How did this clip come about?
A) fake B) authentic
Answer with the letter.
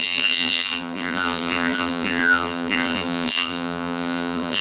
A